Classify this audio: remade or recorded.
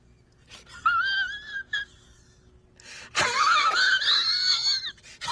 recorded